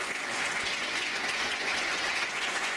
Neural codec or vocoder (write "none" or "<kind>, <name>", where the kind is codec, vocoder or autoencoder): vocoder, Vocos